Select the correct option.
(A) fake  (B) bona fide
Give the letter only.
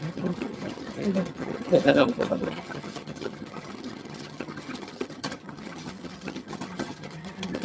A